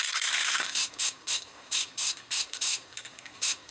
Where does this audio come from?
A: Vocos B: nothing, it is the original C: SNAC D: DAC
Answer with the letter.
C